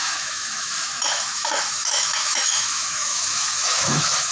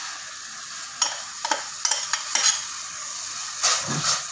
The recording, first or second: second